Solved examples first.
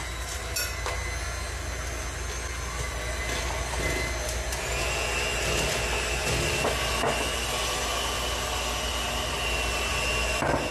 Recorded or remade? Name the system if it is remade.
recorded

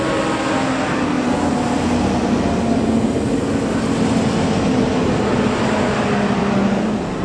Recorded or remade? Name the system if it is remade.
recorded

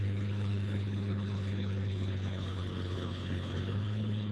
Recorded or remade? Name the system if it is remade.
remade, codec, HILCodec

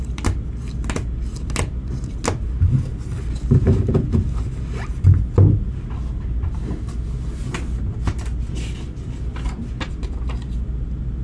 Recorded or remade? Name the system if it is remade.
recorded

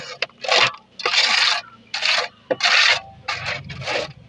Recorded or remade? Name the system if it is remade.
recorded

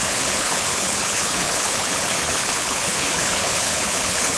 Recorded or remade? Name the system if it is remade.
remade, codec, HILCodec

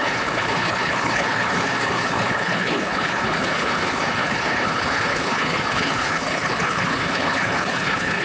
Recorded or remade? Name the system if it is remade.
remade, codec, HILCodec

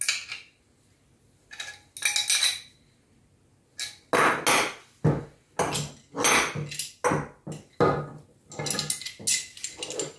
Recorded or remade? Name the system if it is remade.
recorded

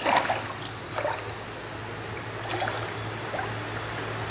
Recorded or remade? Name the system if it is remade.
recorded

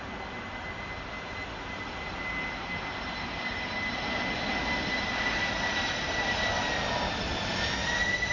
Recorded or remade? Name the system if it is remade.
recorded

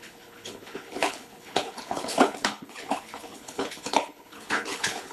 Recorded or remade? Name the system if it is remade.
remade, codec, HILCodec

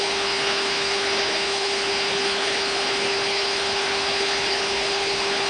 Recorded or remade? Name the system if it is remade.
remade, codec, HILCodec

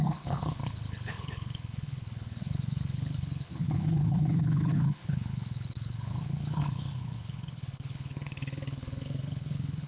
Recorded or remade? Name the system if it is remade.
remade, codec, HILCodec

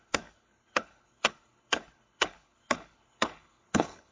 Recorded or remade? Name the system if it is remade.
remade, codec, HILCodec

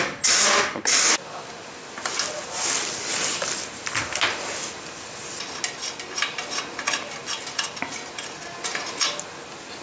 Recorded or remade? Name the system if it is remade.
recorded